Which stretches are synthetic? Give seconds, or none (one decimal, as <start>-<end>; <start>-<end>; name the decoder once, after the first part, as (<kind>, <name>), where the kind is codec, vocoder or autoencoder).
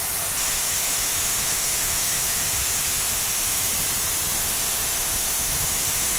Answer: 0.4-3.7 (autoencoder, DAC-VAE); 4.4-6.2